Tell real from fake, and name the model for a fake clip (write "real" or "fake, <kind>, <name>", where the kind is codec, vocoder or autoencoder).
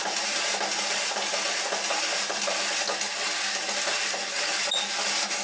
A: real